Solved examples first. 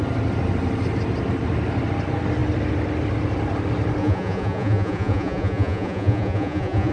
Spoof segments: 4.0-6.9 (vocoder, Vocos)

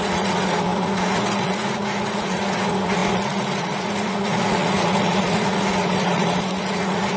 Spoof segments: 0.0-7.2 (vocoder, Vocos)

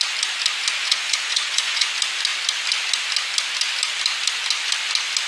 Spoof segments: 0.8-1.9 (vocoder, Vocos)